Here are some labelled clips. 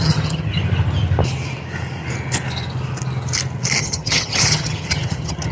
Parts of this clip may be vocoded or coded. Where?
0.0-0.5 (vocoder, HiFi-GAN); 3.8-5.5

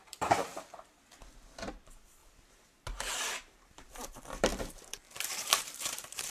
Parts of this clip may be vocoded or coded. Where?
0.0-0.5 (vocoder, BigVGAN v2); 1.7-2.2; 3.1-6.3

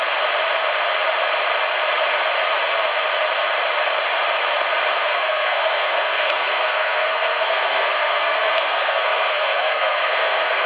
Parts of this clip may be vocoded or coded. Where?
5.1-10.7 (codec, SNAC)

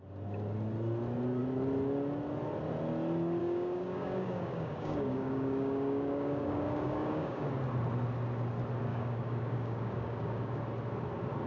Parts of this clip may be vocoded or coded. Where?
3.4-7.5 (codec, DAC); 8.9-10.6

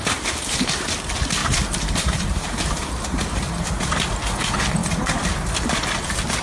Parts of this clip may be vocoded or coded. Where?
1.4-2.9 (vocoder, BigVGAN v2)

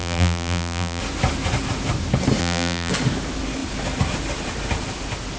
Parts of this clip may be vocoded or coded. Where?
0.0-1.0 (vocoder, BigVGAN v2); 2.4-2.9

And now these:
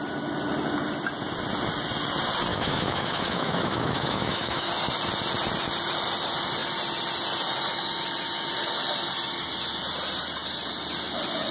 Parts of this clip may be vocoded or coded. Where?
2.5-4.7 (autoencoder, DAC-VAE)